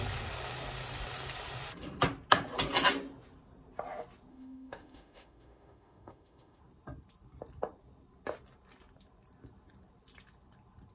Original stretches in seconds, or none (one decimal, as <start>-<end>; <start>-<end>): 0.0-4.3; 6.6-10.9